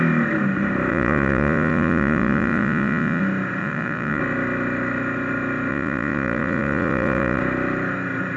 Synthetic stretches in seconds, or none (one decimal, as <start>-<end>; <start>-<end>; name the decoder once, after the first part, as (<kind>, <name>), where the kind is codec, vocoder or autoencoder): 0.9-3.2 (vocoder, Vocos); 3.6-4.2; 5.7-7.4